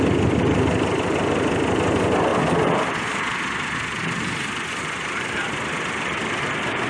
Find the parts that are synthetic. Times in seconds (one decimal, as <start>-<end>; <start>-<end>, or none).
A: 2.3-6.4